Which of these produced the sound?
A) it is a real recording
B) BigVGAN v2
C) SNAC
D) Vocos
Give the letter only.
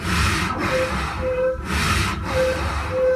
A